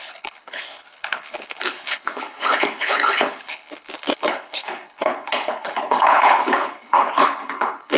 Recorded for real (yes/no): no